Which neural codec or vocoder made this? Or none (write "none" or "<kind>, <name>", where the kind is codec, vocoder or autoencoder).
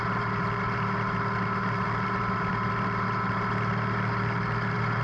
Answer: none